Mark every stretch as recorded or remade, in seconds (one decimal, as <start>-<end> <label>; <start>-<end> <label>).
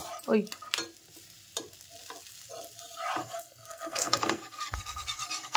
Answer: 0.0-3.2 recorded; 3.2-5.6 remade